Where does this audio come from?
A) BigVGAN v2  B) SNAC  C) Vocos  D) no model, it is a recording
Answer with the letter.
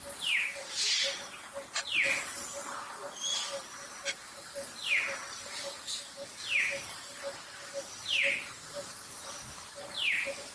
A